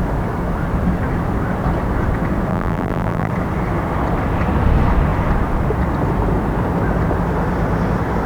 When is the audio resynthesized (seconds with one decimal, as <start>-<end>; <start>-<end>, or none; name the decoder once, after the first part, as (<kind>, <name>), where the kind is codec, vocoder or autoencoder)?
2.5-3.3 (vocoder, BigVGAN v2)